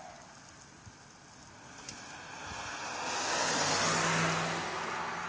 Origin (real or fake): real